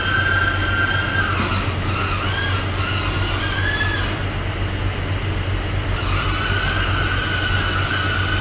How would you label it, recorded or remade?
recorded